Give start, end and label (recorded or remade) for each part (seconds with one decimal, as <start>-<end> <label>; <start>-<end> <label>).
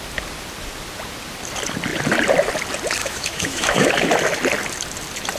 0.0-3.0 recorded; 3.0-3.9 remade; 3.9-5.4 recorded